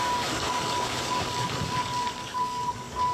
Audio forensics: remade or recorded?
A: remade